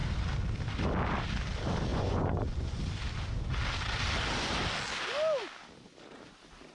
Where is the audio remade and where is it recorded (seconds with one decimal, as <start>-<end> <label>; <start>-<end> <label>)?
0.0-1.9 recorded; 1.9-2.8 remade; 2.8-6.7 recorded

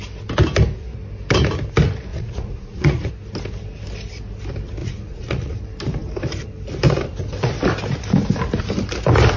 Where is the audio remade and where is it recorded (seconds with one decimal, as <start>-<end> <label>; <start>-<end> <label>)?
0.0-2.1 recorded; 2.1-3.1 remade; 3.1-4.8 recorded; 4.8-5.6 remade; 5.6-9.4 recorded

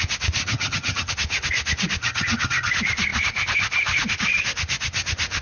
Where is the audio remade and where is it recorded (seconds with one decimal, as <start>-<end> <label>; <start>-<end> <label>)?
0.0-0.4 recorded; 0.4-1.1 remade; 1.1-2.0 recorded; 2.0-2.7 remade; 2.7-5.4 recorded

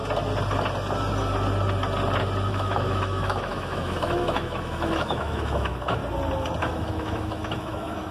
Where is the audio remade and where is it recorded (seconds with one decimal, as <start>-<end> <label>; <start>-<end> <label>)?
0.0-2.5 recorded; 2.5-6.0 remade; 6.0-6.6 recorded; 6.6-8.1 remade

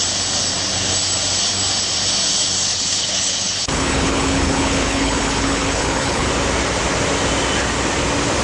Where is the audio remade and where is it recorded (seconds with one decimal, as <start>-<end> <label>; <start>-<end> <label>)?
0.0-2.7 recorded; 2.7-6.3 remade; 6.3-8.4 recorded

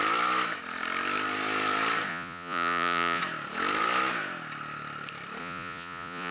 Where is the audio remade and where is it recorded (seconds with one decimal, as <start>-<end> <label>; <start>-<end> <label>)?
0.0-2.1 recorded; 2.1-3.2 remade; 3.2-5.4 recorded; 5.4-6.3 remade

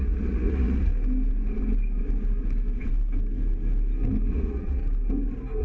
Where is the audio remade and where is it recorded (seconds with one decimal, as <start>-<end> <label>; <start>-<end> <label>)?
0.0-0.9 remade; 0.9-4.3 recorded; 4.3-4.8 remade; 4.8-5.6 recorded

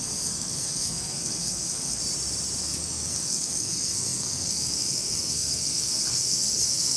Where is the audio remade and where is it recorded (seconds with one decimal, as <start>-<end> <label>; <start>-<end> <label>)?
0.0-2.0 remade; 2.0-2.6 recorded; 2.6-7.0 remade